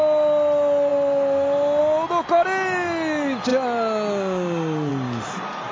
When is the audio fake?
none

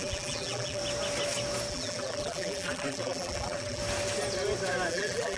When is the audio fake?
0.0-0.8 (vocoder, BigVGAN v2); 1.7-3.8; 4.9-5.4

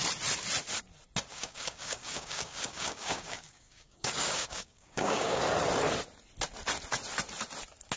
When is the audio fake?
1.3-5.4 (codec, DAC)

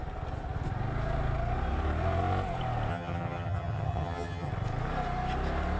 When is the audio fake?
2.9-4.5 (vocoder, HiFi-GAN)

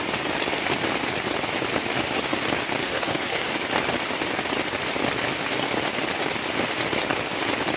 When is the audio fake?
2.8-3.5 (codec, SNAC)

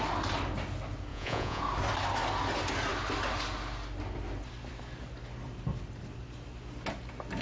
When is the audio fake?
1.1-1.6 (vocoder, Vocos)

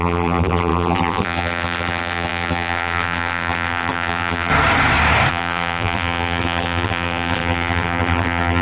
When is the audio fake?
0.0-4.5 (vocoder, BigVGAN v2); 5.3-8.6

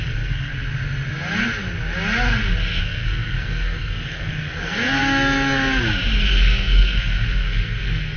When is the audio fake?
0.0-0.5 (codec, SNAC); 2.8-5.0; 6.2-8.2